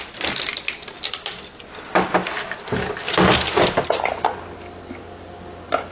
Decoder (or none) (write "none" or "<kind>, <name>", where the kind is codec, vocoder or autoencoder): none